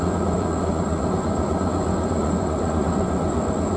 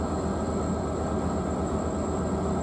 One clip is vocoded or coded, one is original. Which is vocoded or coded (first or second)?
first